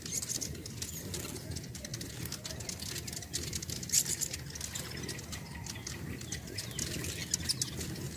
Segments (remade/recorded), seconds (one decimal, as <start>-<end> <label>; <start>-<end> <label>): 0.0-8.2 recorded